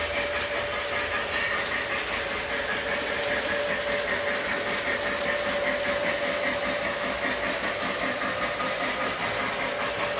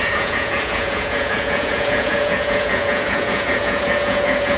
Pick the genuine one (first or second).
first